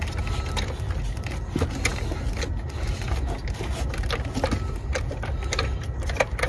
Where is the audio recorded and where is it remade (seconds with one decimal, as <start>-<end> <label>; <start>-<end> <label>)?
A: 0.0-6.5 recorded